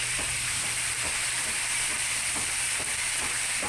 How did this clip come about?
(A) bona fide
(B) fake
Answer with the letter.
B